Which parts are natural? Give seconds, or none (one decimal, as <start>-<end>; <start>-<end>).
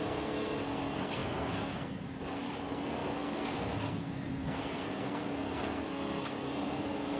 none